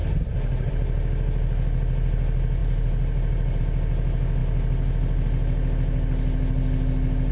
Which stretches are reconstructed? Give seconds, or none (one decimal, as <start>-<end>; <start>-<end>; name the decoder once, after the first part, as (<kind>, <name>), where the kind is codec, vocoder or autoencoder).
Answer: 0.0-0.7 (vocoder, BigVGAN v2); 2.6-3.6